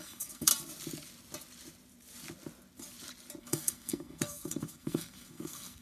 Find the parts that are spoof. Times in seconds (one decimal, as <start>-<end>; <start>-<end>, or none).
0.0-0.5; 3.4-5.8